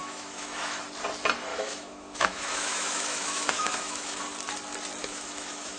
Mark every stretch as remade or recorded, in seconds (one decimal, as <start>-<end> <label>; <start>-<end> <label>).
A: 0.0-0.8 remade; 0.8-1.5 recorded; 1.5-4.2 remade; 4.2-5.0 recorded; 5.0-5.8 remade